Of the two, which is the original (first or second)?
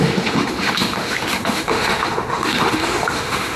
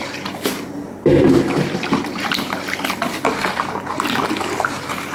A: second